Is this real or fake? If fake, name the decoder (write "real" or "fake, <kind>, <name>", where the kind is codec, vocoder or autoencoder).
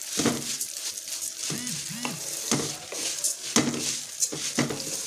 real